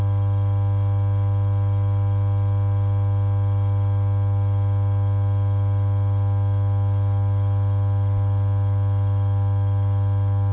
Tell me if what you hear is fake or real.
real